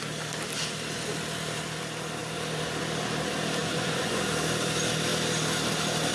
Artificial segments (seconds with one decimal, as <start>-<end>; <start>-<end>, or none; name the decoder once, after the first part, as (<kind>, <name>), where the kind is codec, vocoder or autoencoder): 3.6-4.2 (vocoder, Vocos)

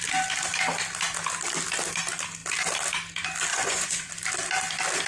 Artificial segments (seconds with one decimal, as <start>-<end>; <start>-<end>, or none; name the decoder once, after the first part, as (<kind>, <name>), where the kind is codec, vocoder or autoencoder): 3.5-4.1 (vocoder, Vocos)

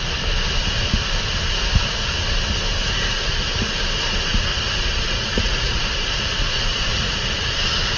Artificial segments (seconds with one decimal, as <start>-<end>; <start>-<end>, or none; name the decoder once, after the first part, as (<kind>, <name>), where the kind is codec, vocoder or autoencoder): 4.5-5.8 (vocoder, Vocos); 6.5-7.1

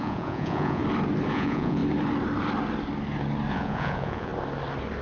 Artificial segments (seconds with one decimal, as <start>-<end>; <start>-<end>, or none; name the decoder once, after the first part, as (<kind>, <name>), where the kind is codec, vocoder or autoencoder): 0.0-0.8 (vocoder, Vocos); 1.3-1.8; 3.5-4.3

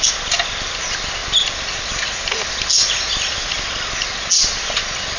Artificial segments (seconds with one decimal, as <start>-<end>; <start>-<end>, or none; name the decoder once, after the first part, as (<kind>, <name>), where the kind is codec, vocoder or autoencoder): none

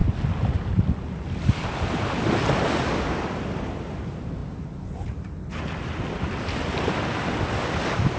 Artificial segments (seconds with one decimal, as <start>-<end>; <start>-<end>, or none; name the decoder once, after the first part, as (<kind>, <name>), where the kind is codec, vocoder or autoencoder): none

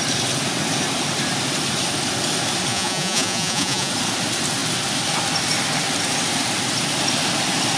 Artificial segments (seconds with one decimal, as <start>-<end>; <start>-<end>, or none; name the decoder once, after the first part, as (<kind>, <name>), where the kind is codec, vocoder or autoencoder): 2.7-3.9 (vocoder, Vocos)